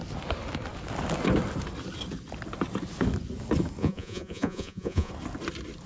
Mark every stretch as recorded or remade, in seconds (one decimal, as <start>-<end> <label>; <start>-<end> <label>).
0.0-3.8 recorded; 3.8-5.1 remade; 5.1-5.9 recorded